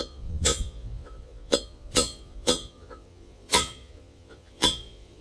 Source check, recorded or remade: remade